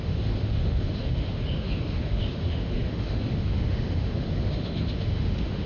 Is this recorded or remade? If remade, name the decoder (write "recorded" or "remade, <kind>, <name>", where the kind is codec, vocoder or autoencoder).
remade, autoencoder, DAC-VAE